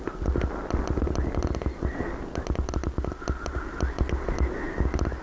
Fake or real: real